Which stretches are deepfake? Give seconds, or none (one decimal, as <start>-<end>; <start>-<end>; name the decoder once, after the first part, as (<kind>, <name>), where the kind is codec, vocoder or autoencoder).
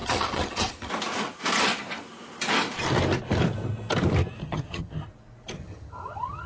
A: 0.0-0.9 (vocoder, HiFi-GAN); 4.4-5.0; 5.6-6.5